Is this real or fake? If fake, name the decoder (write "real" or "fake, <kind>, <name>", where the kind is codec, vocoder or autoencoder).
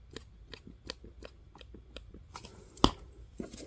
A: real